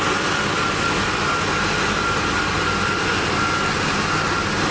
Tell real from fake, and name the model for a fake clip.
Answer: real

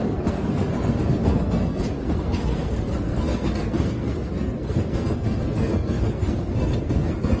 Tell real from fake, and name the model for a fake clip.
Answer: fake, codec, SNAC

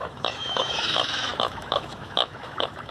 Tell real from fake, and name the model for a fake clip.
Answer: fake, autoencoder, DAC-VAE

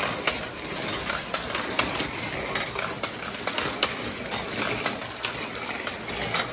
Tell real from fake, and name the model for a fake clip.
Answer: real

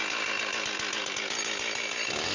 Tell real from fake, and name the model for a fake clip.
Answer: real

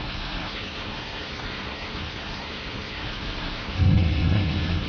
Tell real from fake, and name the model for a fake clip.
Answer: fake, codec, SNAC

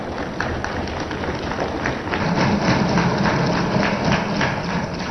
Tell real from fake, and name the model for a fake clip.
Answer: real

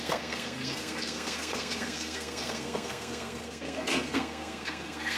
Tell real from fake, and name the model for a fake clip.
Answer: fake, codec, SNAC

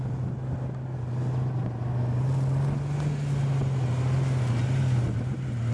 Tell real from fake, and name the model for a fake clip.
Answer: real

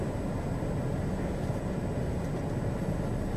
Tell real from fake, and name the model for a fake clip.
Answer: real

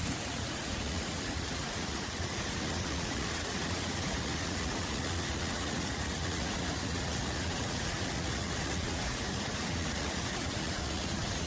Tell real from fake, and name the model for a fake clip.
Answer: fake, vocoder, Vocos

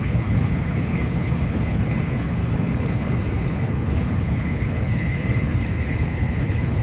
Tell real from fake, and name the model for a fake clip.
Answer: fake, codec, HILCodec